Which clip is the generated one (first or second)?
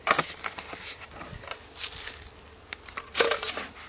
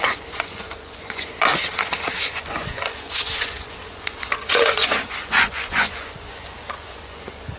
second